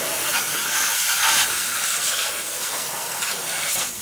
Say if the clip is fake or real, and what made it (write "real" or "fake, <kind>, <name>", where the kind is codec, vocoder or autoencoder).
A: fake, codec, SNAC